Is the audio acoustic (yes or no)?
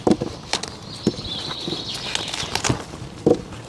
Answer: yes